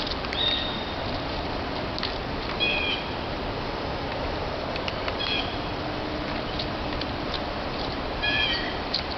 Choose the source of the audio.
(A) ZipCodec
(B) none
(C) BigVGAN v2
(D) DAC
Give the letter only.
C